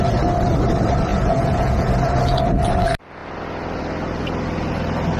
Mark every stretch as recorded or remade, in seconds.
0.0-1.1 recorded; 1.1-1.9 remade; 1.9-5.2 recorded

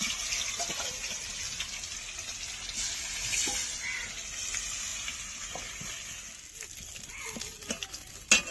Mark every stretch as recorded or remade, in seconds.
0.0-8.5 recorded